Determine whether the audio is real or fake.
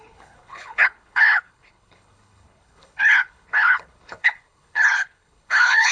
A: fake